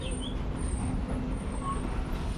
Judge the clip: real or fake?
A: real